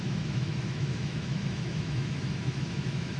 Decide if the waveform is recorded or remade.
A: remade